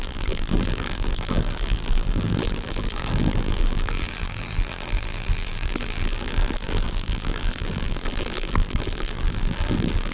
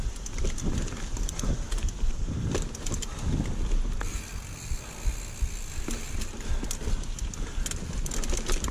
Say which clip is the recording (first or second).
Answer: second